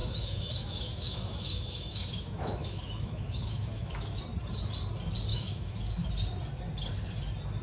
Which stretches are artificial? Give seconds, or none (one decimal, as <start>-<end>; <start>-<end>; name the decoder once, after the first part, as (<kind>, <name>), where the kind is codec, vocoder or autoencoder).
0.0-4.2 (autoencoder, DAC-VAE); 5.3-6.1